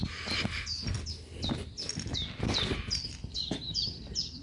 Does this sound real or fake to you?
real